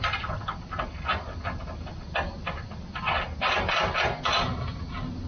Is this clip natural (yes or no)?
yes